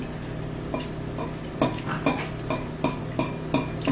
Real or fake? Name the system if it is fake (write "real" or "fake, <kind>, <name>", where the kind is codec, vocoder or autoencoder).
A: real